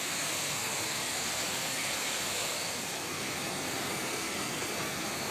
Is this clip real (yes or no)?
no